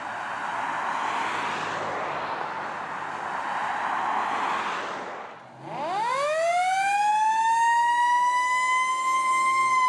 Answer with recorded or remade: recorded